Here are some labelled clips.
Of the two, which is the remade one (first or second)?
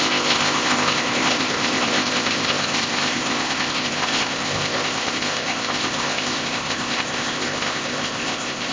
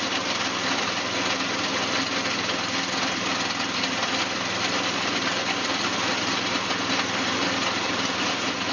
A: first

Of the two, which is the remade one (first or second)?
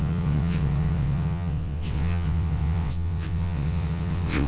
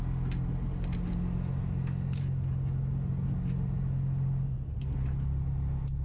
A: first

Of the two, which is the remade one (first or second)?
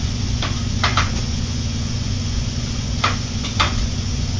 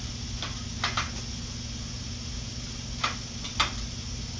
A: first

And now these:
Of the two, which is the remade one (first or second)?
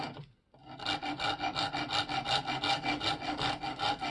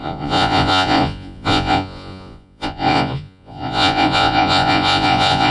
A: second